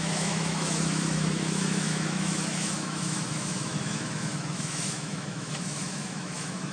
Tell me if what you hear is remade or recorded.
remade